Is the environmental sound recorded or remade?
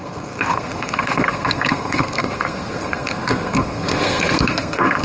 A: remade